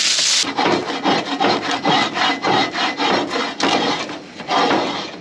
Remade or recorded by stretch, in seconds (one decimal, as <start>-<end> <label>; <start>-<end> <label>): 0.0-5.2 recorded